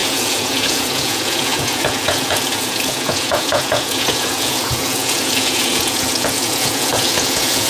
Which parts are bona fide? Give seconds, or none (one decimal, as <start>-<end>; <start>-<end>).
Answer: none